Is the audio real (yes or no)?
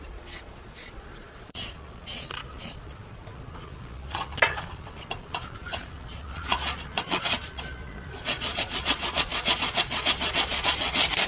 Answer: no